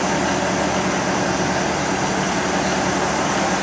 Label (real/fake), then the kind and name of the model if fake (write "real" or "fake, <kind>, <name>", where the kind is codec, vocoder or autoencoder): real